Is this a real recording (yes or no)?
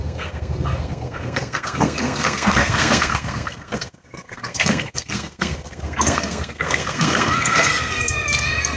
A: no